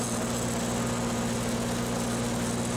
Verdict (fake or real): real